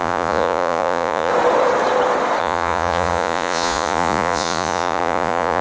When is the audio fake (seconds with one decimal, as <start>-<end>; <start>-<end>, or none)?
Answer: 0.0-1.3; 2.4-5.6